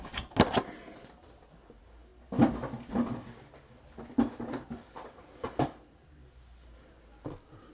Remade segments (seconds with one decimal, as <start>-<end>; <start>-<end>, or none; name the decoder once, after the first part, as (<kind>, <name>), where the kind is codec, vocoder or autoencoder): none